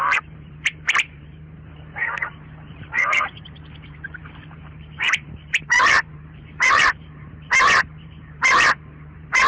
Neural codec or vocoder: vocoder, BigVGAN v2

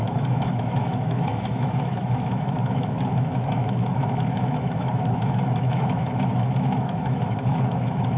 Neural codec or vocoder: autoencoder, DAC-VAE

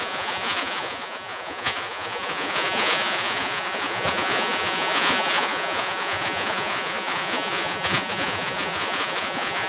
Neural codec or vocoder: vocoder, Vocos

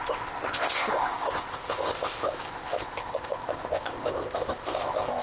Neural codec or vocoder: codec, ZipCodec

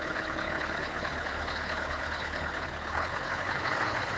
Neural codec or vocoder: codec, HILCodec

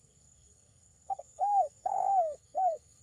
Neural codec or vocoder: codec, SNAC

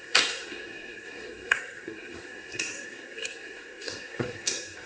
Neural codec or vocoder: codec, SNAC